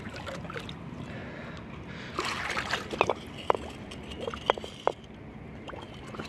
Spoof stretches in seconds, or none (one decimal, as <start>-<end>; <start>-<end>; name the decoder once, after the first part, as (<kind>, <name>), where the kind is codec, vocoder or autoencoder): none